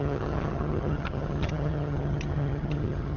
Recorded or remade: remade